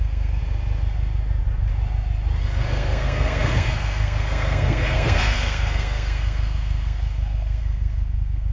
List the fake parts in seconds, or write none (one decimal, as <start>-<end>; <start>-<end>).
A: 0.0-0.4; 2.4-8.5

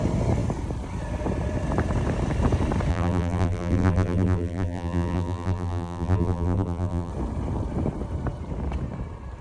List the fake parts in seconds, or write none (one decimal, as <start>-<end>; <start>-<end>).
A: 2.9-7.1